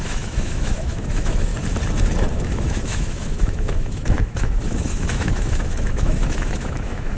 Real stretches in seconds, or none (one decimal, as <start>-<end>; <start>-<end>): 1.5-2.3